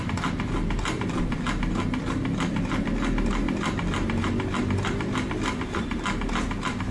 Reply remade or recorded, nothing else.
recorded